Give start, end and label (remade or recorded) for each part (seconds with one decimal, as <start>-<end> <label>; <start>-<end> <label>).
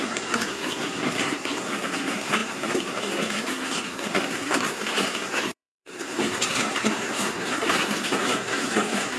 0.0-9.2 remade